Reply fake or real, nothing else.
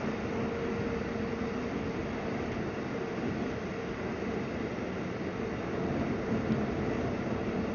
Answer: real